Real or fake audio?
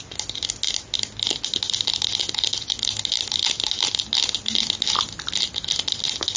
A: real